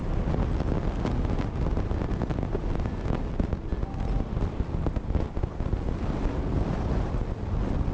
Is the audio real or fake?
real